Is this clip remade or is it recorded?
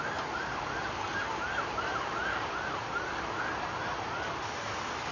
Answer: recorded